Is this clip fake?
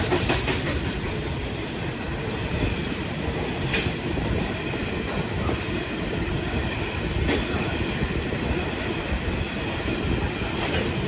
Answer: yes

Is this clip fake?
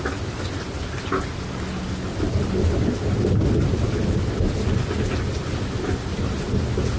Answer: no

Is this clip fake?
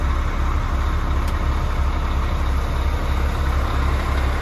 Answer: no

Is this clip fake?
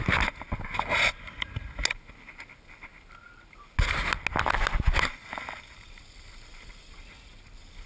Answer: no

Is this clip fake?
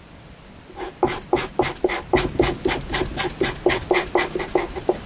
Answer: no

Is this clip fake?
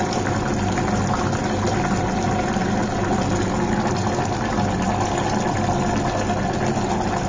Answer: no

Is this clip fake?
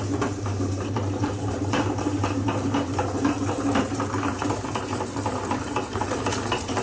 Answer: yes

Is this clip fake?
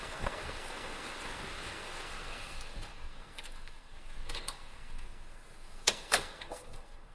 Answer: yes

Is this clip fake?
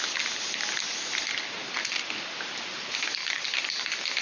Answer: no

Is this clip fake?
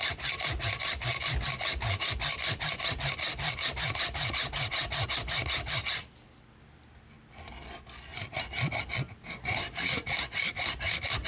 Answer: no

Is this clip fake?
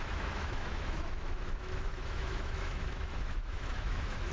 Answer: yes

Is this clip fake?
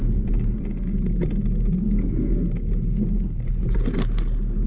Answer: no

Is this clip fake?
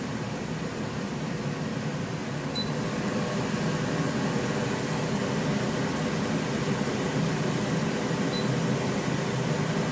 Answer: no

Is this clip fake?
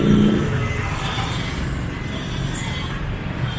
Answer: no